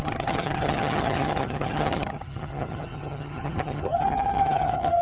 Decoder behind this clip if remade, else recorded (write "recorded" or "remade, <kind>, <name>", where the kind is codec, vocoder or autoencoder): remade, vocoder, HiFi-GAN